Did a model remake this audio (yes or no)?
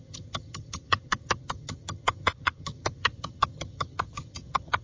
yes